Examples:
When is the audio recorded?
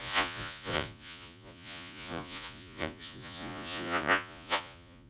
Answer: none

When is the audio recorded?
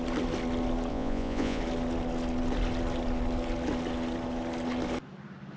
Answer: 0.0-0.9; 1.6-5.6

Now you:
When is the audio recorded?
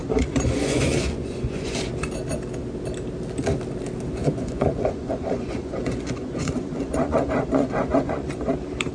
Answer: 1.9-4.2; 8.5-8.9